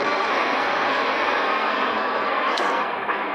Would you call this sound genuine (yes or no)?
no